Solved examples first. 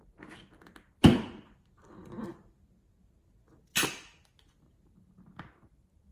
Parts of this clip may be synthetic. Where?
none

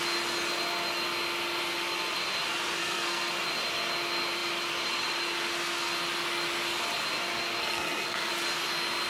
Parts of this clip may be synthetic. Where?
2.8-3.3 (codec, SNAC); 7.6-8.3

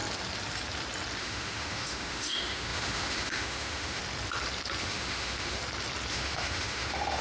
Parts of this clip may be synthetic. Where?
1.2-4.0 (autoencoder, DAC-VAE); 4.8-5.6; 6.1-7.2

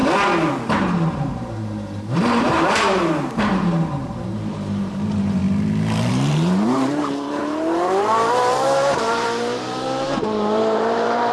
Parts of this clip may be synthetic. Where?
0.5-5.4 (vocoder, BigVGAN v2); 6.1-11.3

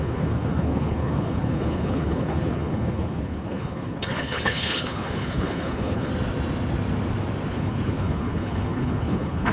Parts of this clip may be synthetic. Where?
0.0-6.1 (codec, HILCodec); 7.5-9.5